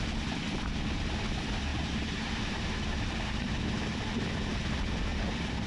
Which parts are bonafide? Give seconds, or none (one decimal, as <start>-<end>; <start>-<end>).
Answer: 0.0-1.7; 3.5-5.1